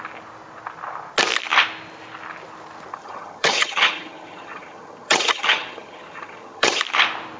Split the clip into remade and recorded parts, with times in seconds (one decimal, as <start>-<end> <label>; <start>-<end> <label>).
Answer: 0.0-2.9 recorded; 2.9-6.8 remade; 6.8-7.4 recorded

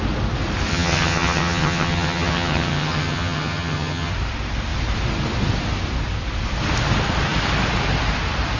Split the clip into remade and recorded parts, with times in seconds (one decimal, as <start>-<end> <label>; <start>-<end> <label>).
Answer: 0.0-0.7 recorded; 0.7-4.1 remade; 4.1-8.6 recorded

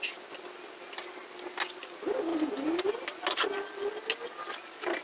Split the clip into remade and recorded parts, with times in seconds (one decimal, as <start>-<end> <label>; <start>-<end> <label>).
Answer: 0.0-5.0 recorded

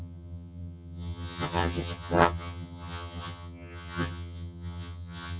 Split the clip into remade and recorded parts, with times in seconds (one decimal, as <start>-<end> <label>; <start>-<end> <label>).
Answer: 0.0-5.4 remade

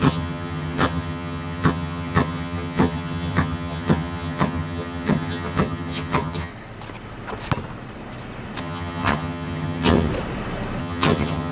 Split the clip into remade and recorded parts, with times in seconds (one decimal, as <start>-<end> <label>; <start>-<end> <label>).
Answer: 0.0-6.5 remade; 6.5-8.6 recorded; 8.6-10.1 remade; 10.1-10.8 recorded; 10.8-11.5 remade